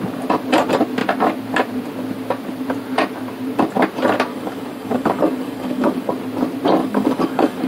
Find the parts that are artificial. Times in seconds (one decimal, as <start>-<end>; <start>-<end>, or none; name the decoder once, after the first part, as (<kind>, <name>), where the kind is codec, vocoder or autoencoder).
4.3-6.1 (codec, DAC); 6.8-7.7